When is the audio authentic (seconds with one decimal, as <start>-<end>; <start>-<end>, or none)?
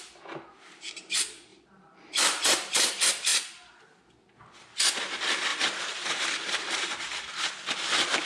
0.0-1.5; 2.9-5.5; 7.5-8.3